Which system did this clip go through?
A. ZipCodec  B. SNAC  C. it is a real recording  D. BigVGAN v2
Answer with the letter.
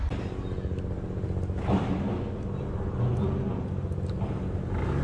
C